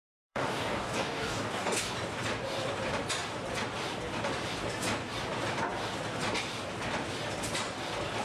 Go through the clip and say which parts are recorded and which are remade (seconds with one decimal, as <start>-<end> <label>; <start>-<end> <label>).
0.0-1.9 remade; 1.9-8.2 recorded